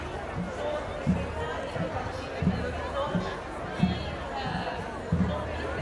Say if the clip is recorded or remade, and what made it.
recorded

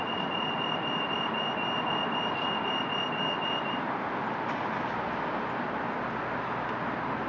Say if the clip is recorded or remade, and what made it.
recorded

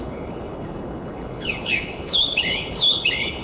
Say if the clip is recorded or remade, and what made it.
remade, codec, HILCodec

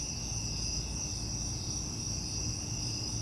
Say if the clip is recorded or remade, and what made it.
recorded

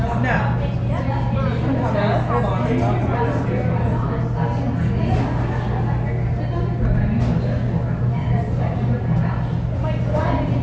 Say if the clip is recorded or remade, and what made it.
recorded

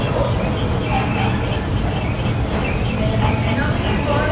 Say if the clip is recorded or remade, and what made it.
recorded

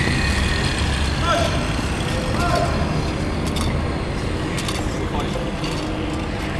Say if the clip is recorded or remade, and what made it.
recorded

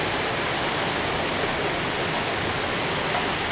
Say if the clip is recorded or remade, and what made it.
recorded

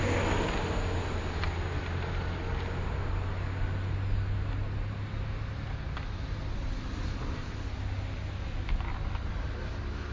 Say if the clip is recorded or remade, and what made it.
recorded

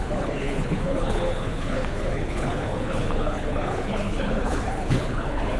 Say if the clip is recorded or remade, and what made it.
remade, codec, HILCodec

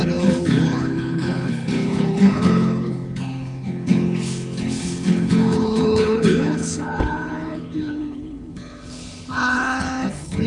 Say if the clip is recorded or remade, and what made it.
remade, codec, HILCodec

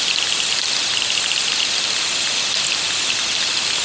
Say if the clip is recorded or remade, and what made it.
recorded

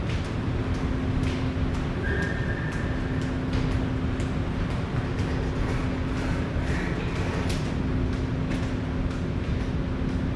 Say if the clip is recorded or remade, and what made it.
recorded